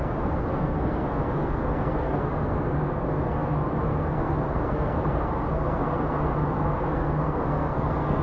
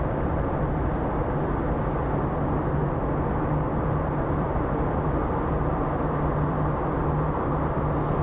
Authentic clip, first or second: second